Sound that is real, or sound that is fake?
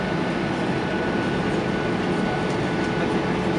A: real